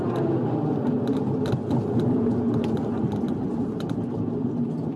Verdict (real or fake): real